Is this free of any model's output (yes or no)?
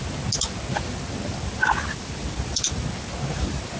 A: yes